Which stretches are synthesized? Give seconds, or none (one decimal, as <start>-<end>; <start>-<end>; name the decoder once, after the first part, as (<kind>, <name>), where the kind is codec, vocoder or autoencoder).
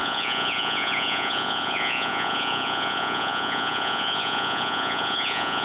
0.0-5.6 (vocoder, Vocos)